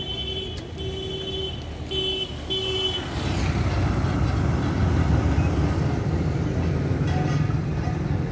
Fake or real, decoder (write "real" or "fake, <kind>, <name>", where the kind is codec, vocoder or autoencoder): real